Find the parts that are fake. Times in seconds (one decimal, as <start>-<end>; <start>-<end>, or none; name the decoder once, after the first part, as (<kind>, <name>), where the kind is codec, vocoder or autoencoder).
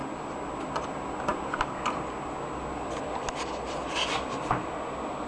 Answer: none